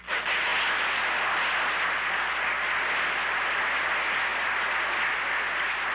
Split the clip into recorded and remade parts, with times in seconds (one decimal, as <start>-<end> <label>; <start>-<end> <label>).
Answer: 0.0-5.9 recorded

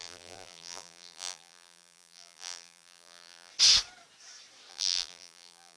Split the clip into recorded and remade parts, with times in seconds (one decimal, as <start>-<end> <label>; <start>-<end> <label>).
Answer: 0.0-3.5 remade; 3.5-4.7 recorded; 4.7-5.8 remade

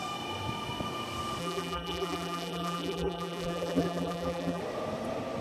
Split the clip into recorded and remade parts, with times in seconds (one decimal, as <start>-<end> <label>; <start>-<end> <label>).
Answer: 0.0-1.4 recorded; 1.4-4.6 remade; 4.6-5.4 recorded